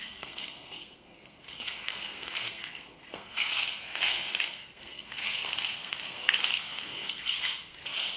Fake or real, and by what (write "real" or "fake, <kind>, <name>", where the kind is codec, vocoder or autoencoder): fake, codec, SNAC